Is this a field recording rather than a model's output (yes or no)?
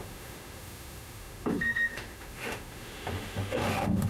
no